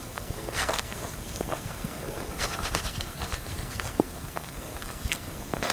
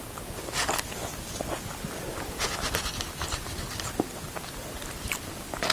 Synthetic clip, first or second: first